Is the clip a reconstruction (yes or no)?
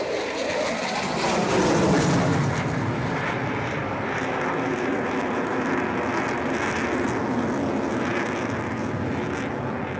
no